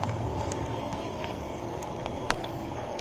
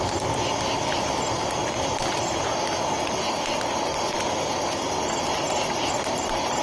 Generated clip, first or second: first